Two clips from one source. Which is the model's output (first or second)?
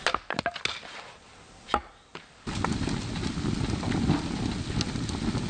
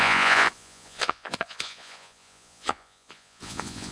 second